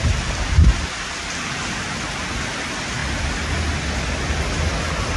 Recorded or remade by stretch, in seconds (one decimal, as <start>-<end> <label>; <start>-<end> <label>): 0.0-5.2 recorded